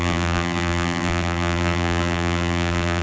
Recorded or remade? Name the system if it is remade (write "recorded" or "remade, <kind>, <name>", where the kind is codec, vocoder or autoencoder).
remade, vocoder, BigVGAN v2